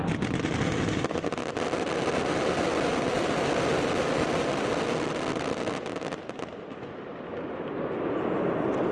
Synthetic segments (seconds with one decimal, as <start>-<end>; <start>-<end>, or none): none